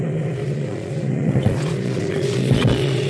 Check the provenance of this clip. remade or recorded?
remade